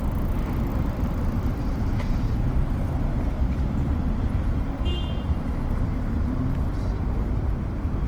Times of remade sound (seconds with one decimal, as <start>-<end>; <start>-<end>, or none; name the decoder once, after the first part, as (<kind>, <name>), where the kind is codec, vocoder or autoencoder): 0.7-2.0 (vocoder, BigVGAN v2)